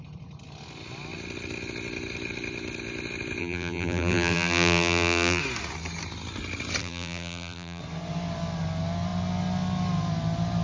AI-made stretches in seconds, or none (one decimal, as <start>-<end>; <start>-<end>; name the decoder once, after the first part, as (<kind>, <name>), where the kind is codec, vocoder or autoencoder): 3.4-5.4 (vocoder, BigVGAN v2); 6.8-7.8